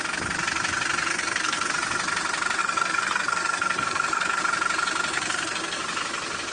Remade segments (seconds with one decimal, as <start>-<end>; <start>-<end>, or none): 1.1-1.7; 2.6-4.4; 5.1-5.8